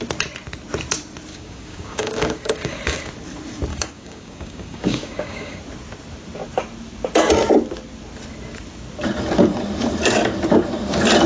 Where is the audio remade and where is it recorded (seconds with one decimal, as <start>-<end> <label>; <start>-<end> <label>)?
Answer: 0.0-1.3 recorded; 1.3-3.1 remade; 3.1-3.7 recorded; 3.7-5.6 remade; 5.6-11.3 recorded

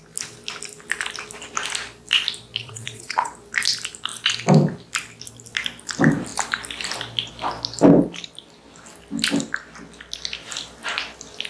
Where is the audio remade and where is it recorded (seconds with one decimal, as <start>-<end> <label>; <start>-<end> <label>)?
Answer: 0.0-2.6 recorded; 2.6-3.3 remade; 3.3-11.5 recorded

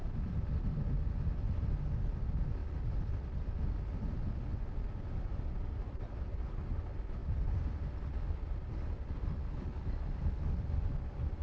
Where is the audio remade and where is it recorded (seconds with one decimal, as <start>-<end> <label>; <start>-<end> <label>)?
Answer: 0.0-11.4 recorded

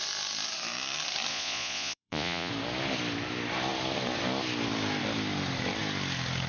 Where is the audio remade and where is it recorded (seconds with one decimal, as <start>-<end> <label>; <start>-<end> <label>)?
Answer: 0.0-1.3 recorded; 1.3-2.5 remade; 2.5-6.5 recorded

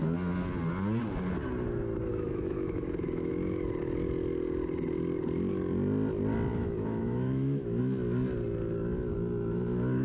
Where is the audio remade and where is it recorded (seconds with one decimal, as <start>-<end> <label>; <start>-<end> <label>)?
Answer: 0.0-2.1 recorded; 2.1-3.3 remade; 3.3-6.5 recorded; 6.5-7.8 remade; 7.8-10.0 recorded

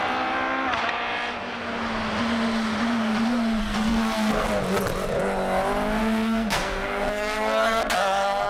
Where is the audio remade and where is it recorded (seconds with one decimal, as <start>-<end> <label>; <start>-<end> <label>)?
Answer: 0.0-3.6 recorded; 3.6-4.5 remade; 4.5-6.0 recorded; 6.0-8.5 remade

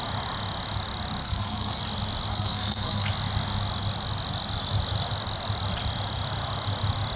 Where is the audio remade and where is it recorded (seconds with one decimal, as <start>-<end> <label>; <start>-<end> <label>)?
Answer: 0.0-1.2 recorded; 1.2-1.8 remade; 1.8-2.3 recorded; 2.3-3.1 remade; 3.1-7.2 recorded

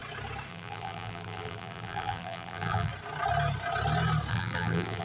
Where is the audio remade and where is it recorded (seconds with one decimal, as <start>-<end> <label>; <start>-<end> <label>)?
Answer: 0.0-0.5 recorded; 0.5-2.9 remade; 2.9-4.3 recorded; 4.3-5.0 remade